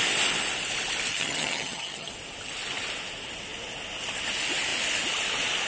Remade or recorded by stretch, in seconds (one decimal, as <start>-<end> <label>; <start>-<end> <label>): 0.0-1.1 recorded; 1.1-2.1 remade; 2.1-5.7 recorded